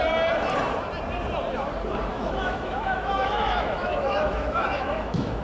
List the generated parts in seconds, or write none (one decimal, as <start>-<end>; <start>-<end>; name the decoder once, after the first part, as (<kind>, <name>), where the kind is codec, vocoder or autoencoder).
2.1-5.4 (autoencoder, DAC-VAE)